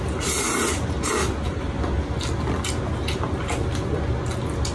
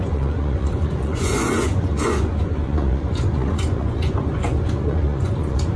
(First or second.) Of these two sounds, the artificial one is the second